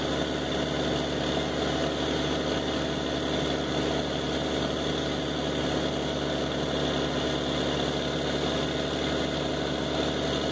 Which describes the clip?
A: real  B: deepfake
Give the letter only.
A